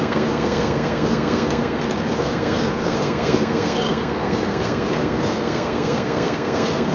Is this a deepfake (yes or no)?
yes